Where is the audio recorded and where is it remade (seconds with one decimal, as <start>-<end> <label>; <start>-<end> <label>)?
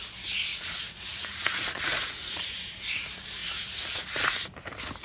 0.0-0.5 recorded; 0.5-2.6 remade; 2.6-3.4 recorded; 3.4-4.4 remade; 4.4-5.0 recorded